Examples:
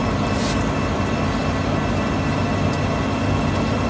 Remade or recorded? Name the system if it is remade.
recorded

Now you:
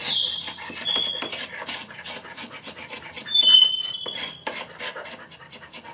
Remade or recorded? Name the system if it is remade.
remade, vocoder, BigVGAN v2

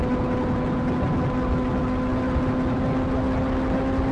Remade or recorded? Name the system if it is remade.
recorded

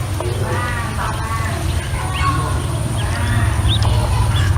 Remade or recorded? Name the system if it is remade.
recorded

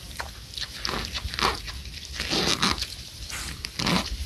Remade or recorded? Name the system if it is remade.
recorded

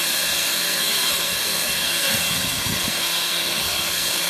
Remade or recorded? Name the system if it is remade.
remade, codec, SNAC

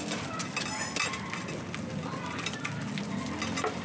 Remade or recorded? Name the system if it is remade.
recorded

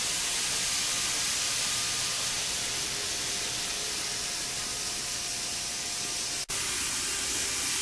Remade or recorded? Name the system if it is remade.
recorded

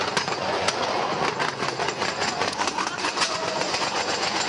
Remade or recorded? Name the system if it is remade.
remade, vocoder, Vocos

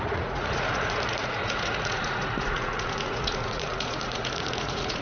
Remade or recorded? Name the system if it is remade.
remade, vocoder, Vocos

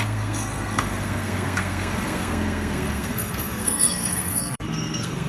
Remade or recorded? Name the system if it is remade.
remade, codec, SNAC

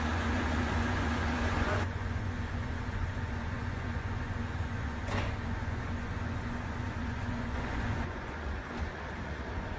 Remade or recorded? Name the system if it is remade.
remade, vocoder, Vocos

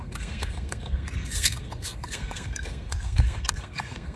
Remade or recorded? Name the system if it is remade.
remade, codec, SNAC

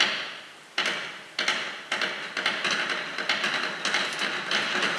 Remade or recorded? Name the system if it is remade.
recorded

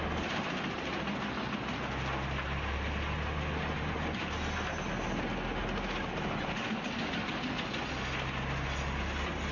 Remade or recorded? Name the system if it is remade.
recorded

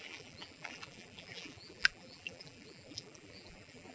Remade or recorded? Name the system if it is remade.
remade, vocoder, BigVGAN v2